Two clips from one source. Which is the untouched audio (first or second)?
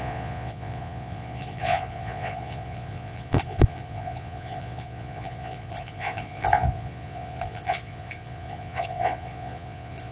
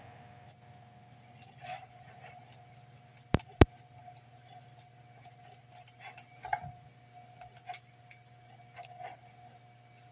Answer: second